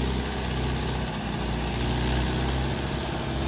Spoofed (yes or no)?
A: no